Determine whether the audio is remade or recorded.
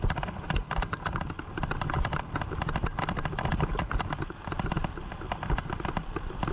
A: recorded